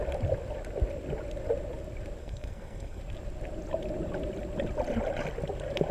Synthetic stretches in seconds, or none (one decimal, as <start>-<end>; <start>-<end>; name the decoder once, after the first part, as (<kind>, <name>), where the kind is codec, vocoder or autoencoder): 2.2-3.0 (codec, SNAC)